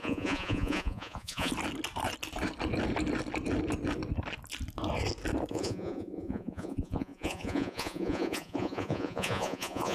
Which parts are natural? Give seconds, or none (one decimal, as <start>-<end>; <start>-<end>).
1.5-5.5